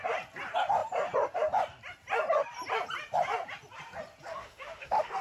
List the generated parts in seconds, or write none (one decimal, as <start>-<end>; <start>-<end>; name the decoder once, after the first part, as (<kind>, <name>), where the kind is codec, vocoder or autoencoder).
4.3-5.2 (autoencoder, DAC-VAE)